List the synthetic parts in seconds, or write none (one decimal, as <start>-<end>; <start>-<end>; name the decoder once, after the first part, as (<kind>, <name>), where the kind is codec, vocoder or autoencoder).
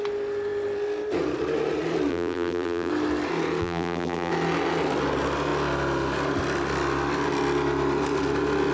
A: 2.1-2.9 (vocoder, BigVGAN v2); 3.6-4.3